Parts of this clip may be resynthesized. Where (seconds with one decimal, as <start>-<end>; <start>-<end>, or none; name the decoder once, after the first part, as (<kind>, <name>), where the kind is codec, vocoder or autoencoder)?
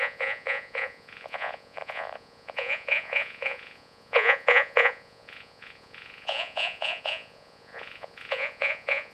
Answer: 0.0-9.1 (vocoder, Vocos)